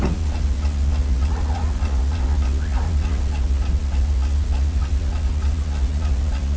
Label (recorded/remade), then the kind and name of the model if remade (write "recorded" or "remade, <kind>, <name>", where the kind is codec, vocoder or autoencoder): remade, vocoder, Vocos